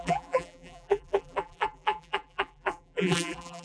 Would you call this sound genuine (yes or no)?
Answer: no